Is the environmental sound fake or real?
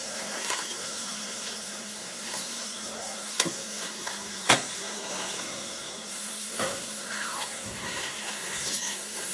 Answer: fake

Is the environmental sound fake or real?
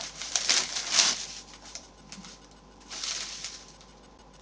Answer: fake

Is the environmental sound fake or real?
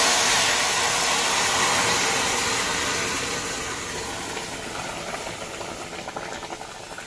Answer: real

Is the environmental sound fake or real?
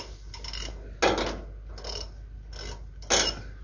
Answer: real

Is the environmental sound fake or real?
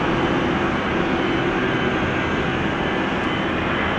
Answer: real